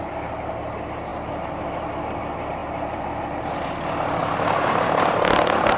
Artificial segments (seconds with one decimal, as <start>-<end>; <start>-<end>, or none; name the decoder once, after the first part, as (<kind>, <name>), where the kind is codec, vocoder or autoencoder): 0.0-4.2 (vocoder, BigVGAN v2); 5.0-5.8